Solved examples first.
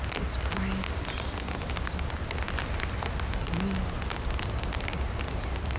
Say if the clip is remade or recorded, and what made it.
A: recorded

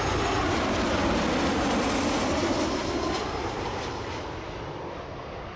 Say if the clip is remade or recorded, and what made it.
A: recorded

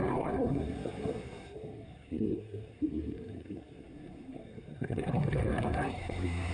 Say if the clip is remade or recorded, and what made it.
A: remade, codec, SNAC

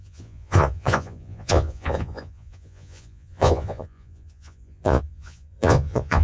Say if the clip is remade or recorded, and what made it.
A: remade, vocoder, Vocos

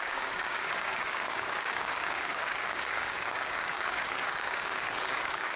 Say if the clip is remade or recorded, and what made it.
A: remade, codec, DAC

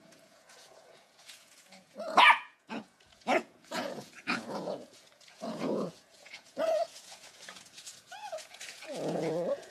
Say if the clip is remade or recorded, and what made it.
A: remade, vocoder, Vocos